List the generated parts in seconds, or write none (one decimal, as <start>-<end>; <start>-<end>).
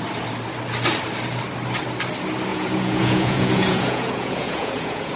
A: 2.5-5.2